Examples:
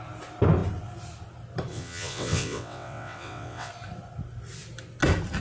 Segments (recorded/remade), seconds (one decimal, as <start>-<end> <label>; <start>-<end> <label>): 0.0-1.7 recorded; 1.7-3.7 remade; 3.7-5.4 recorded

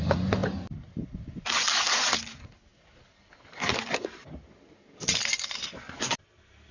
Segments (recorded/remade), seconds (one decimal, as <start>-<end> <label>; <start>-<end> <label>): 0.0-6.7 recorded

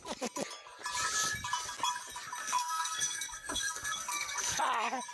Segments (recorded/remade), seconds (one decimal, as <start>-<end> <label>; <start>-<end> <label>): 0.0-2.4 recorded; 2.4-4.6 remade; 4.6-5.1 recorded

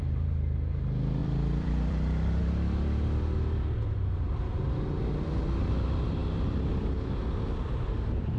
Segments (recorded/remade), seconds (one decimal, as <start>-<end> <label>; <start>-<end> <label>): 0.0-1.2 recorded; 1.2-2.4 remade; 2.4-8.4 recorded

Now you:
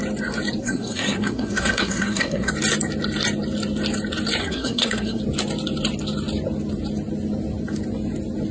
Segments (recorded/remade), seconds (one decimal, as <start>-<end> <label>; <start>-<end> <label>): 0.0-0.6 recorded; 0.6-2.5 remade; 2.5-4.4 recorded; 4.4-5.2 remade; 5.2-8.5 recorded